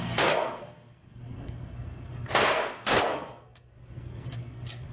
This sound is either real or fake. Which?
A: fake